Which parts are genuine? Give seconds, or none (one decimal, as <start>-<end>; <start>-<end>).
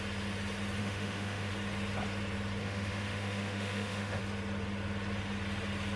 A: 0.0-0.8; 1.5-2.6; 4.2-6.0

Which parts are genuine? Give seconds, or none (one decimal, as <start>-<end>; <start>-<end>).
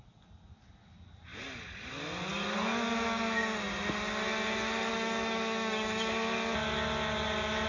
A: 0.0-4.9; 6.1-7.7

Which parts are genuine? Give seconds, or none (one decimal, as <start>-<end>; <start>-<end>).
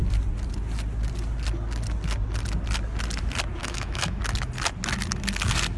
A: 0.0-3.6; 4.2-5.8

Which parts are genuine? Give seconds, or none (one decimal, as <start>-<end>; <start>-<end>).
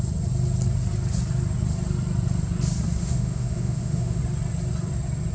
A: 0.0-3.0; 4.2-5.3